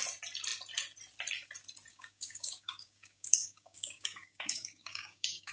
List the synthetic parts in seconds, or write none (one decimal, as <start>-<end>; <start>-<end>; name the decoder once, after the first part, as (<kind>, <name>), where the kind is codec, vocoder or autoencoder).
1.9-5.5 (codec, DAC)